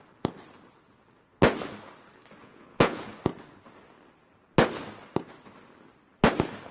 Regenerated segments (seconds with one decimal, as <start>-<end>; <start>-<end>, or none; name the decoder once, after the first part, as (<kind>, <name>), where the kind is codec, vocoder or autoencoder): 2.4-3.0 (vocoder, Vocos)

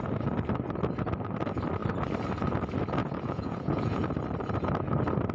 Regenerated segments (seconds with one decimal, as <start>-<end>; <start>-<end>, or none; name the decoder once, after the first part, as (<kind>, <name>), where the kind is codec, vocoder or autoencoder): 3.0-4.1 (vocoder, Vocos)

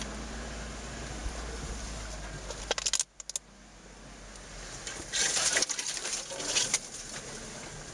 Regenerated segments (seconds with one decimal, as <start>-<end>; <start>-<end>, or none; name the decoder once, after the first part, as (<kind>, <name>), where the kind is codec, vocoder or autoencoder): none

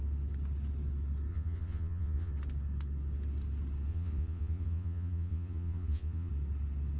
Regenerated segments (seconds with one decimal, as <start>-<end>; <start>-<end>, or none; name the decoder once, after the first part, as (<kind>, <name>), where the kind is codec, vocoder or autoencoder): 1.3-2.3 (vocoder, Vocos); 3.9-6.3

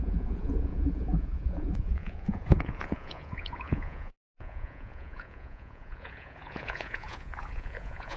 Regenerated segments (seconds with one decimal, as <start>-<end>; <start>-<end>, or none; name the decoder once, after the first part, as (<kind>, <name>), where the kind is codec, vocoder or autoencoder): 0.0-8.2 (vocoder, Vocos)

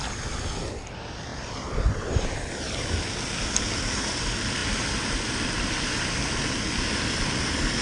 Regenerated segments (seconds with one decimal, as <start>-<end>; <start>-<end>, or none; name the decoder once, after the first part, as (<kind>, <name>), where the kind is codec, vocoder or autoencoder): none

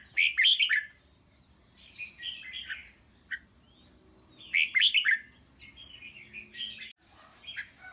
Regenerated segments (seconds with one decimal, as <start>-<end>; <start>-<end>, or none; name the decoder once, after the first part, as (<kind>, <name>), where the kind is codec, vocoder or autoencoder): none